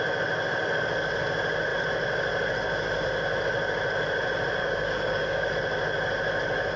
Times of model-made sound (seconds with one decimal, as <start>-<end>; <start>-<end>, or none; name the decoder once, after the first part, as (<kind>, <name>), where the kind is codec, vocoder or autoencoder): 4.6-5.5 (codec, DAC)